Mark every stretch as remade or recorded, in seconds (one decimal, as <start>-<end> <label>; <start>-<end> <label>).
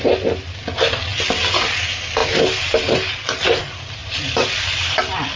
0.0-1.1 remade; 1.1-1.7 recorded; 1.7-2.2 remade; 2.2-3.6 recorded; 3.6-5.4 remade